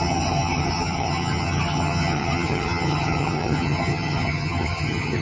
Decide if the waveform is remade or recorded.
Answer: remade